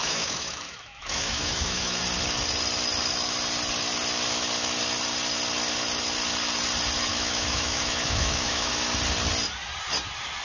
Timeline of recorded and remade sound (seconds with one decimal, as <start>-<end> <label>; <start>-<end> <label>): 0.0-2.0 remade; 2.0-7.1 recorded; 7.1-8.7 remade; 8.7-10.4 recorded